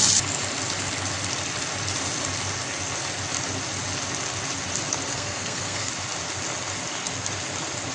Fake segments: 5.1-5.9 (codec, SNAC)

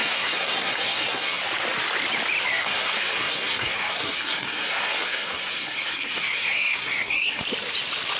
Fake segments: 0.0-1.4 (codec, SNAC); 2.5-7.4

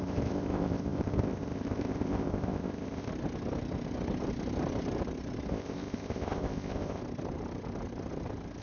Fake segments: 0.0-3.1 (codec, ZipCodec); 5.5-7.0

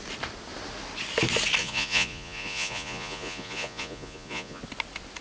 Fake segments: 1.6-4.6 (vocoder, Vocos)

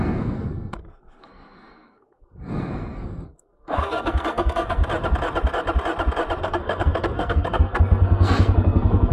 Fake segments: 0.0-4.8 (codec, SNAC); 6.4-9.1

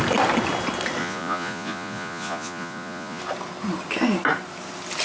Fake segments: 1.0-3.2 (vocoder, Vocos)

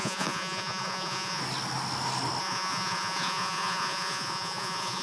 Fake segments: 0.0-1.4 (vocoder, Vocos); 2.4-5.0